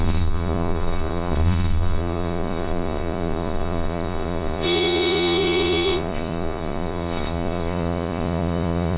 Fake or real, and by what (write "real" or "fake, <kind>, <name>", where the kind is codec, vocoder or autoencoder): fake, vocoder, Vocos